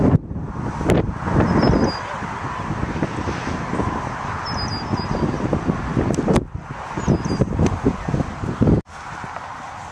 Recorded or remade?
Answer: recorded